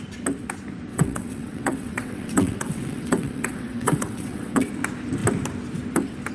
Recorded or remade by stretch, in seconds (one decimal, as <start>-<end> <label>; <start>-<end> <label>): 0.0-0.9 recorded; 0.9-4.7 remade; 4.7-6.3 recorded